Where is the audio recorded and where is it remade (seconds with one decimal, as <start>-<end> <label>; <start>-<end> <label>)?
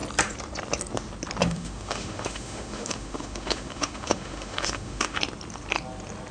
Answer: 0.0-1.4 recorded; 1.4-5.2 remade; 5.2-6.3 recorded